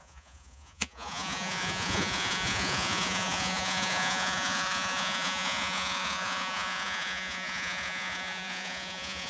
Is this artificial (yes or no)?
yes